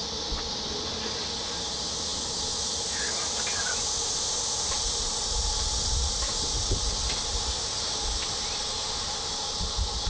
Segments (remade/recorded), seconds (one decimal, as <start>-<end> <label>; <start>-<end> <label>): 0.0-10.1 recorded